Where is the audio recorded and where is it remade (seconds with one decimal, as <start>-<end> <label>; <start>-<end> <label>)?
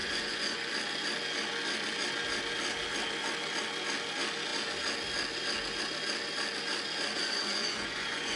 0.0-0.7 remade; 0.7-7.2 recorded; 7.2-8.4 remade